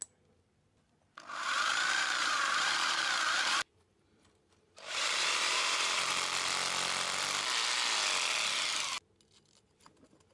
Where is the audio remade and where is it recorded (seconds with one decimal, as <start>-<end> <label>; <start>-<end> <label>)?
0.0-1.7 recorded; 1.7-6.1 remade; 6.1-10.3 recorded